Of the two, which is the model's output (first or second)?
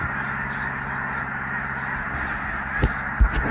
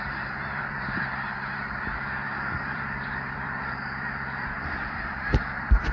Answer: second